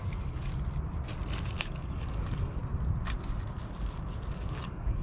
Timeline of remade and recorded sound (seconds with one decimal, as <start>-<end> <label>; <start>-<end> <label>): 0.0-0.5 remade; 0.5-1.6 recorded; 1.6-2.6 remade; 2.6-4.3 recorded; 4.3-5.0 remade